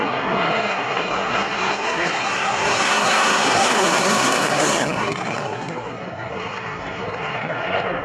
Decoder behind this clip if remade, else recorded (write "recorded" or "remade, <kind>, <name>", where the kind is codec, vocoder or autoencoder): remade, codec, SNAC